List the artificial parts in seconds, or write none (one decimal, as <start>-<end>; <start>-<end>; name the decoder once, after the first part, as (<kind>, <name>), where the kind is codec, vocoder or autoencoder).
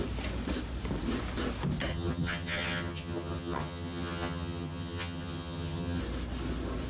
1.9-6.0 (vocoder, HiFi-GAN)